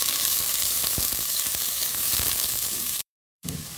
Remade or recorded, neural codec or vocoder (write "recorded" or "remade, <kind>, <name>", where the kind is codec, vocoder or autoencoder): remade, codec, DAC